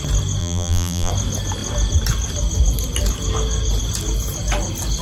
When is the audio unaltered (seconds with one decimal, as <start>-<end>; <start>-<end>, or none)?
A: 0.0-0.4; 1.1-5.0